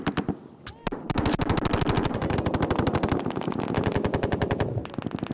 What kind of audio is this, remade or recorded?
recorded